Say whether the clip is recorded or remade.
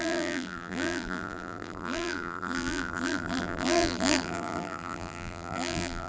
remade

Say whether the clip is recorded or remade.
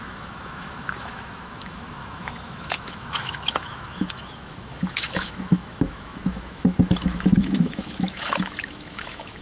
remade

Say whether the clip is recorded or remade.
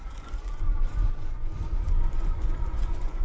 remade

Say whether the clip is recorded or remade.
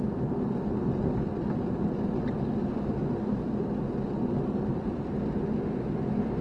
recorded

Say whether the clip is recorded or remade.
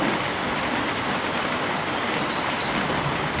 recorded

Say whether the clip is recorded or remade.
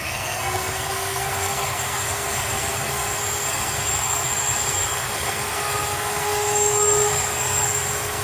remade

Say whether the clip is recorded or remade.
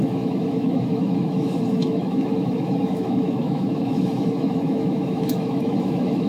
remade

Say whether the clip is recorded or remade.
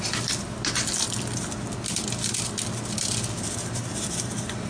recorded